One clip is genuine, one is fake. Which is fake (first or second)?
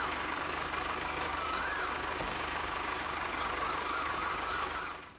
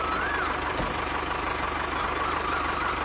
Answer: first